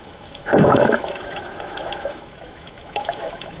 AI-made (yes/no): yes